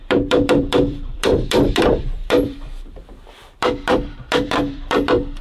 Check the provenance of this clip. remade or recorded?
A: remade